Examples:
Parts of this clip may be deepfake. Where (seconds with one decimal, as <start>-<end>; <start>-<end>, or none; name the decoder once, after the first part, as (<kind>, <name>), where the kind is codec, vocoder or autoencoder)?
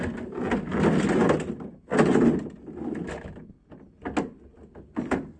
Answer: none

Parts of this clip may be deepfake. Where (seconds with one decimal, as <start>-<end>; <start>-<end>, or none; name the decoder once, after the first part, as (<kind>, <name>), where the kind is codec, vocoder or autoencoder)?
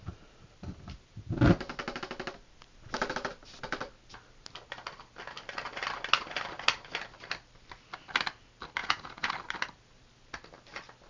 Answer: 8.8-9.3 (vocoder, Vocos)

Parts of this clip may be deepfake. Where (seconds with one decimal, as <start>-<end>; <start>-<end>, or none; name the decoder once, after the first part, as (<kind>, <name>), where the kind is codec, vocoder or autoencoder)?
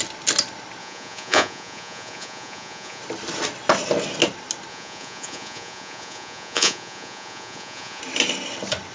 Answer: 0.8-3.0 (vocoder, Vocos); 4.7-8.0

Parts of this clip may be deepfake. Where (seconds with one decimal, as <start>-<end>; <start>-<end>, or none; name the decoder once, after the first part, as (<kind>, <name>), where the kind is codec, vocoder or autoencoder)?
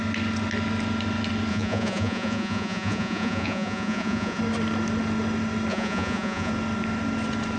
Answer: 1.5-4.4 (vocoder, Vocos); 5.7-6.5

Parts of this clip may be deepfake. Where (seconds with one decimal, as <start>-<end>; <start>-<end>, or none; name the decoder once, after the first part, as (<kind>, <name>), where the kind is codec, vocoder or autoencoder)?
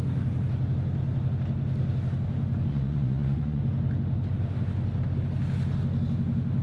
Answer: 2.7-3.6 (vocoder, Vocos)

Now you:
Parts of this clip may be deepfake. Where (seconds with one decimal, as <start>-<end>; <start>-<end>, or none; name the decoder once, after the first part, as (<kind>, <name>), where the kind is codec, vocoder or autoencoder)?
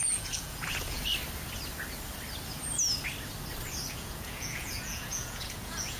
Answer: 0.0-1.1 (vocoder, Vocos); 3.9-6.0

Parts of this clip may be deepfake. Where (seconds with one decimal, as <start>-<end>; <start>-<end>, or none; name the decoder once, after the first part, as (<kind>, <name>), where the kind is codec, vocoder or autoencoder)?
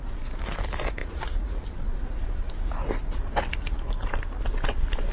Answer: 1.0-1.6 (vocoder, Vocos)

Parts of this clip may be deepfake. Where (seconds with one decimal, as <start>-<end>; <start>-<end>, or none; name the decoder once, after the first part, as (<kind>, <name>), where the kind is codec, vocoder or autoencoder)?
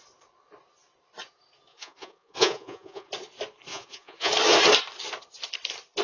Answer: 1.7-3.1 (vocoder, Vocos); 3.7-4.3